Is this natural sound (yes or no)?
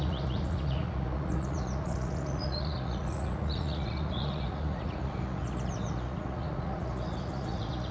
no